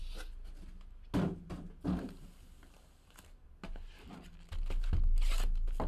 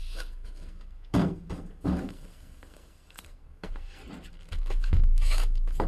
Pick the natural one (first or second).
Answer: first